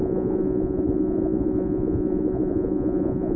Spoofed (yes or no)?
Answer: yes